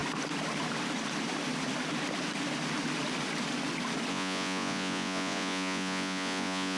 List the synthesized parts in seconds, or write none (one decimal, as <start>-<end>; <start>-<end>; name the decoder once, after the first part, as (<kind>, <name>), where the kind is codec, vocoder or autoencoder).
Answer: 4.1-6.8 (vocoder, Vocos)